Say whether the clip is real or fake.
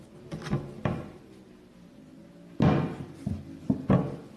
real